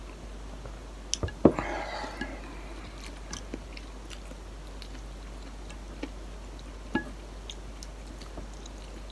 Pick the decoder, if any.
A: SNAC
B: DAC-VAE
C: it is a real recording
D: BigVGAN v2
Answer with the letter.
C